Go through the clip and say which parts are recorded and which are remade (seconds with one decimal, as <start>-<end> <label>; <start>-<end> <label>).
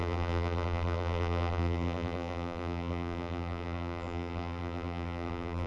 0.0-5.7 remade